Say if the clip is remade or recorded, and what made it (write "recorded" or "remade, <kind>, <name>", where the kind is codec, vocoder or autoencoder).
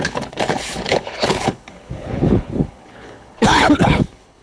remade, codec, HILCodec